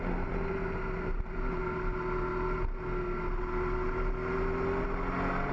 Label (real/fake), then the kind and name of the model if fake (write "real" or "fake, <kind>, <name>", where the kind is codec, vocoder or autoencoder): real